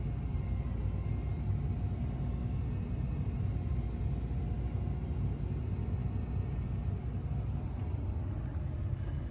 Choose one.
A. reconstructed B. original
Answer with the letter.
B